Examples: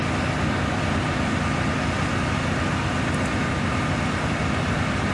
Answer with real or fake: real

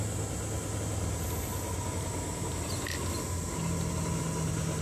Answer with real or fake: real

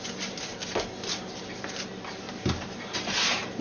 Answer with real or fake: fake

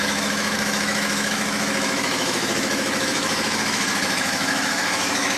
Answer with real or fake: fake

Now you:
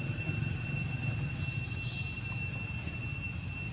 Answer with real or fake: real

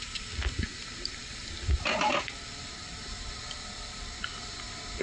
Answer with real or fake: real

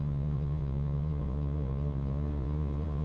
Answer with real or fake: fake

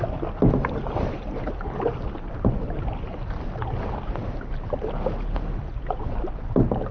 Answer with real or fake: real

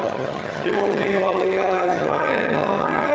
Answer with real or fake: fake